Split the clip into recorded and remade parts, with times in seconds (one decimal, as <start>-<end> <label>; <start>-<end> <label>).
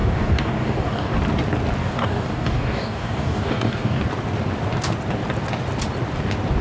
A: 0.0-1.1 remade; 1.1-1.8 recorded; 1.8-4.0 remade; 4.0-6.6 recorded